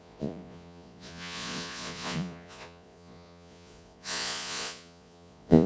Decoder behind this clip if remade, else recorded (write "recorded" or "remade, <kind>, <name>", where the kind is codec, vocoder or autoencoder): remade, vocoder, Vocos